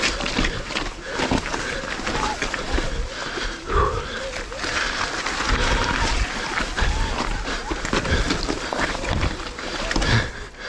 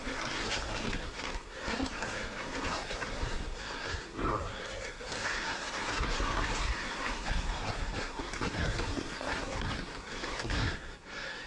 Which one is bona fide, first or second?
first